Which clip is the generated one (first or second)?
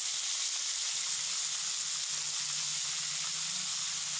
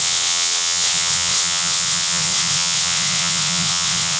second